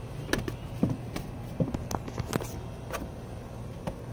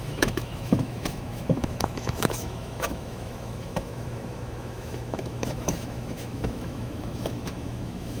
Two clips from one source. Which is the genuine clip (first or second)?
first